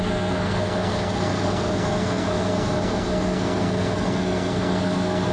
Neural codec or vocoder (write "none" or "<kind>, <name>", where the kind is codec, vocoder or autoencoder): codec, SNAC